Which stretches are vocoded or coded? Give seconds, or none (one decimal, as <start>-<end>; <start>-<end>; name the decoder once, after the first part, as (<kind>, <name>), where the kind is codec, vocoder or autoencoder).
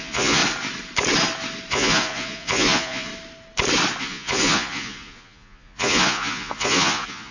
0.0-0.4 (vocoder, Vocos); 1.7-3.1; 4.0-7.3